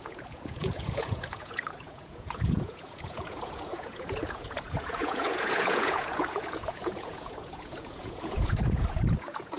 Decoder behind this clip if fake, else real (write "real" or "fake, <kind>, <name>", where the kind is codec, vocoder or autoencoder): fake, vocoder, Vocos